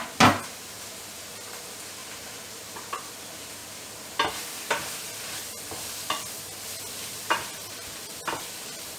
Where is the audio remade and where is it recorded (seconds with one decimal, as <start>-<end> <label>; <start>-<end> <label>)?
0.0-2.0 recorded; 2.0-2.5 remade; 2.5-9.0 recorded